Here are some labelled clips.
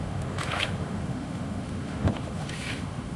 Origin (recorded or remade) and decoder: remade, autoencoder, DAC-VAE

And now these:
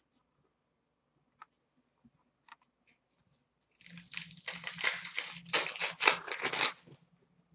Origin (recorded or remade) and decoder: recorded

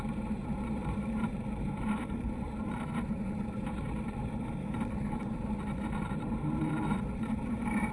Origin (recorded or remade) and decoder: remade, vocoder, BigVGAN v2